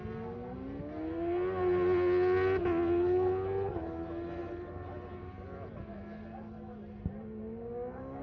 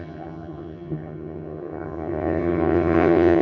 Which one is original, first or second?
first